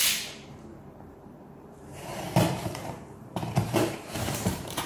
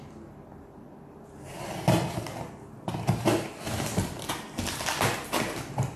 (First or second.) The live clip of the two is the second